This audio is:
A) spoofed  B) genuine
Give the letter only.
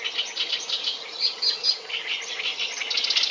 B